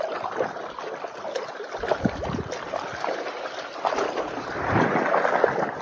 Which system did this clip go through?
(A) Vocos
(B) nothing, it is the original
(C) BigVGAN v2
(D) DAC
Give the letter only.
B